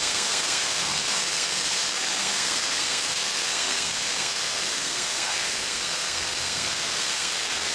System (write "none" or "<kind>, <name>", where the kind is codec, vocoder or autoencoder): codec, SNAC